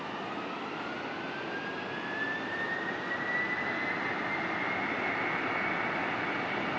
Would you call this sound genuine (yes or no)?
yes